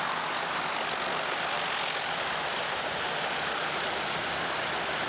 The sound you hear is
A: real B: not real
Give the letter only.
A